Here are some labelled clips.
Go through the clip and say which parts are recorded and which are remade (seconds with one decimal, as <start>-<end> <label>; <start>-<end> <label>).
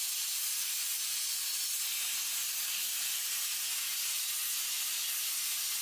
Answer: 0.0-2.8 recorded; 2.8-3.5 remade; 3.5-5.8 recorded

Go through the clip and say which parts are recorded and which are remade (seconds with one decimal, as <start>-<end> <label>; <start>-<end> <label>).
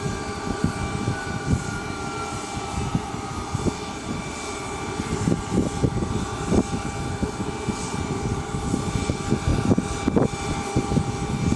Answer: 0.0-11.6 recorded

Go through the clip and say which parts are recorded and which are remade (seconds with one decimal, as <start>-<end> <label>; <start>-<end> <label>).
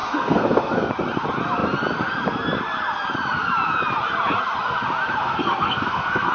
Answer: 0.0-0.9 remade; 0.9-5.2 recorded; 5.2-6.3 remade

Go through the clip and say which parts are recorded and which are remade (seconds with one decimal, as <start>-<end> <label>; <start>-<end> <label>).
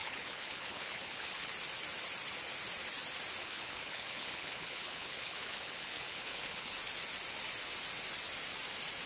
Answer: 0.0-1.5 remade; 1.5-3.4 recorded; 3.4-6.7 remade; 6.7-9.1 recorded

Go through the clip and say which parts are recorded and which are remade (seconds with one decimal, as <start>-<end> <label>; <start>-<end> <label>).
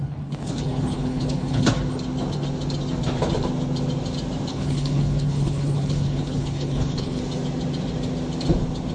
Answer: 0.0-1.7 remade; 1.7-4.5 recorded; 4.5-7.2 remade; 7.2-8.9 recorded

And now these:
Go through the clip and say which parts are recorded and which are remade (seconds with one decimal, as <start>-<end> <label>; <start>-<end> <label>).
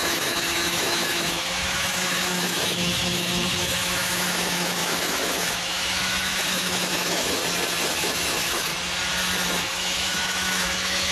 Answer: 0.0-7.4 remade; 7.4-7.9 recorded; 7.9-8.7 remade; 8.7-9.6 recorded; 9.6-11.1 remade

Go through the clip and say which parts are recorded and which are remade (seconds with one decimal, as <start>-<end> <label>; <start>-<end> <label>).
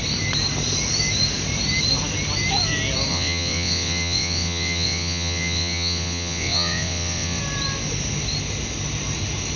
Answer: 0.0-3.1 recorded; 3.1-7.4 remade; 7.4-9.6 recorded